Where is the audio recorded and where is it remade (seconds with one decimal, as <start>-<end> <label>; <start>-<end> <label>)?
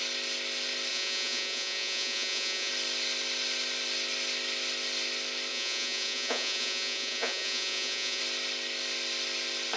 0.0-0.9 recorded; 0.9-2.7 remade; 2.7-5.5 recorded; 5.5-8.2 remade; 8.2-9.8 recorded